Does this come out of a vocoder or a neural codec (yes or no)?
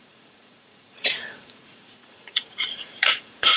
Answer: yes